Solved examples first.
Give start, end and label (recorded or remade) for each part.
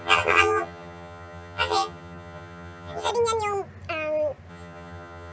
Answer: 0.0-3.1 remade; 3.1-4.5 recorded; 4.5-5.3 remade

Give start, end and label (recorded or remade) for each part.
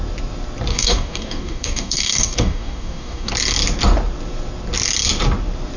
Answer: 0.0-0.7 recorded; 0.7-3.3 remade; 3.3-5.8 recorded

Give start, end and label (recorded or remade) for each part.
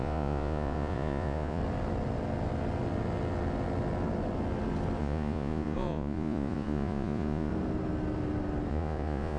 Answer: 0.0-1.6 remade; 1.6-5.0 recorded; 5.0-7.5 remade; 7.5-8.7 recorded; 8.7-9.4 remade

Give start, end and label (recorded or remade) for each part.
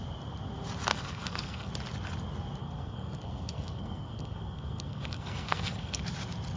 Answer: 0.0-0.9 recorded; 0.9-1.7 remade; 1.7-2.6 recorded; 2.6-6.0 remade; 6.0-6.6 recorded